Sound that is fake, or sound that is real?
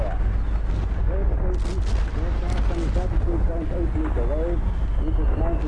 real